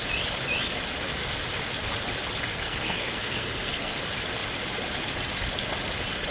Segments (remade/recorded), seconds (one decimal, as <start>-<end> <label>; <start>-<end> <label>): 0.0-2.5 recorded; 2.5-4.0 remade; 4.0-6.3 recorded